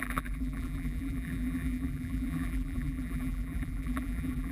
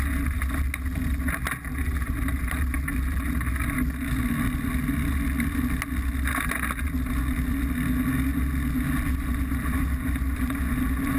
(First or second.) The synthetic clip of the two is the first